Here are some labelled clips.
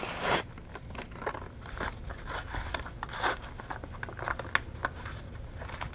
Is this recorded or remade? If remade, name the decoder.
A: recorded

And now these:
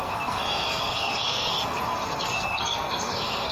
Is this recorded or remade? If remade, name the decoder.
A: remade, codec, SNAC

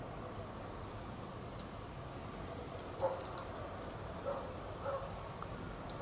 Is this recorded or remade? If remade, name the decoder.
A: recorded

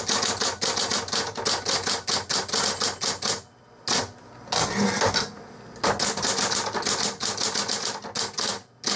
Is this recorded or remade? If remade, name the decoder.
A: recorded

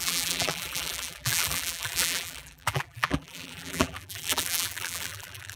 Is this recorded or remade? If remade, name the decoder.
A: remade, vocoder, BigVGAN v2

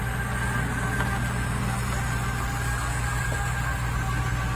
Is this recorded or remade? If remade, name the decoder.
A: recorded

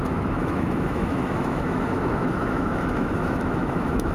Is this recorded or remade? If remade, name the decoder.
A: remade, autoencoder, DAC-VAE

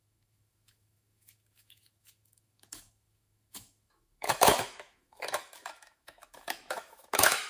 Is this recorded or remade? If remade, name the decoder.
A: remade, autoencoder, DAC-VAE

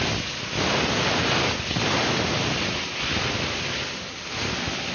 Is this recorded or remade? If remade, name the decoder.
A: recorded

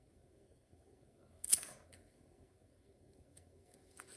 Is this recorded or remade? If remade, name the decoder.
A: remade, codec, SNAC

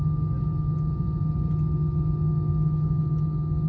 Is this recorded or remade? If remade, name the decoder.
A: recorded